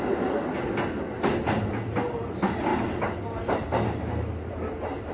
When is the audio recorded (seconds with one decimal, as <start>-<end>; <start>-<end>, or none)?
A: 0.0-5.1